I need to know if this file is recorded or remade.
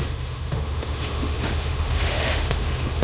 remade